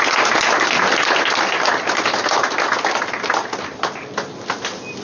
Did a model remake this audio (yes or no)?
no